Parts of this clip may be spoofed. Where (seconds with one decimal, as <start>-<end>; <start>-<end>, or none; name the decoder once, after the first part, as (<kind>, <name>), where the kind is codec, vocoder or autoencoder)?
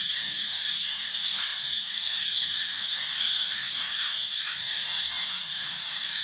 0.0-6.2 (codec, DAC)